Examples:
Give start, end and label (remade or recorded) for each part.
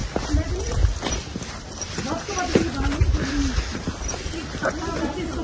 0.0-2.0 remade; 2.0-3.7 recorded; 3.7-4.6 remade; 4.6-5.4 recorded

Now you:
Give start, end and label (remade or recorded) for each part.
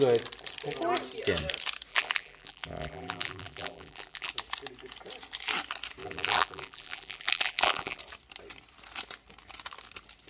0.0-1.9 recorded; 1.9-4.3 remade; 4.3-6.0 recorded; 6.0-8.0 remade; 8.0-10.3 recorded